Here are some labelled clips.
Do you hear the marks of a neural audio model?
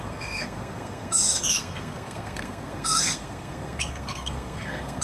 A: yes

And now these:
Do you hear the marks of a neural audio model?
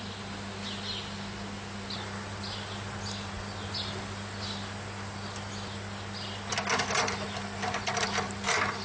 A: no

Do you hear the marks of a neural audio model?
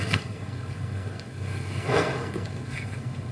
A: yes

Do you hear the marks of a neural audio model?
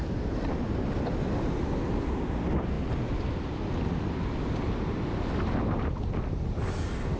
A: no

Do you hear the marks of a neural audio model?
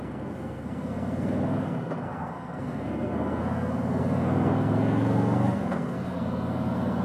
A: yes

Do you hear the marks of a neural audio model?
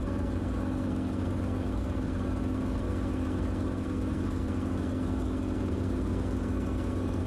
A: yes